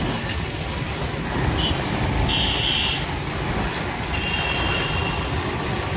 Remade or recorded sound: recorded